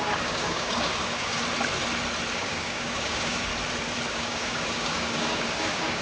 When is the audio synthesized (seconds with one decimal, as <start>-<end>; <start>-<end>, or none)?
0.0-1.4; 2.3-3.5; 4.1-6.0